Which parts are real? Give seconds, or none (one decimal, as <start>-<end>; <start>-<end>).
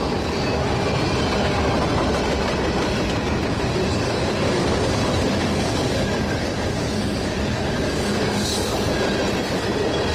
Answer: 0.0-3.9; 8.9-10.1